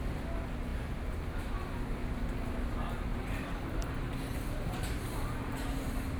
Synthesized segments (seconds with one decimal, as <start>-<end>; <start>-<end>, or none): 3.1-6.2